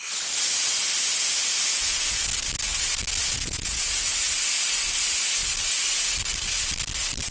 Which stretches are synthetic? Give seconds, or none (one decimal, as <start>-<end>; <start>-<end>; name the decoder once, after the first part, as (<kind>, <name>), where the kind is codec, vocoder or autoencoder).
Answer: 1.7-2.3 (vocoder, Vocos); 3.2-4.1